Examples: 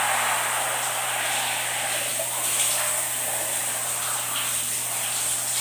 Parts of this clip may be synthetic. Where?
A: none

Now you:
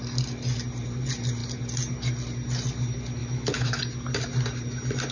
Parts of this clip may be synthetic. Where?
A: 3.2-3.8 (autoencoder, DAC-VAE)